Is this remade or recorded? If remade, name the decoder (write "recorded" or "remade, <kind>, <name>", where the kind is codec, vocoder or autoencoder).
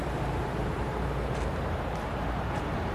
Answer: remade, vocoder, BigVGAN v2